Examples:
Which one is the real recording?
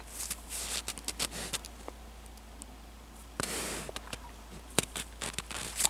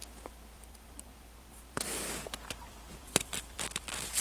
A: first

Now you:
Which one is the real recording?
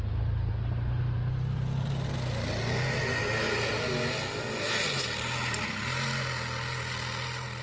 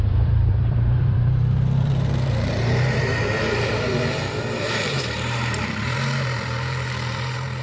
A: first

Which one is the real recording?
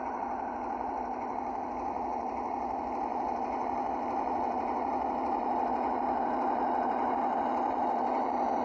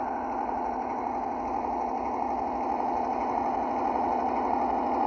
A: second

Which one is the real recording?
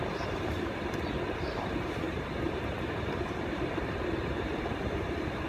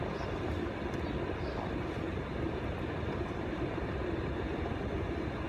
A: second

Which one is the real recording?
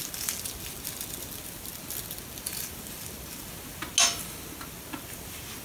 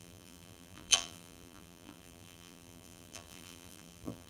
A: first